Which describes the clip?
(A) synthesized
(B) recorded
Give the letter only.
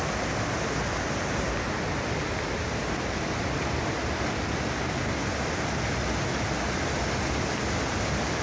B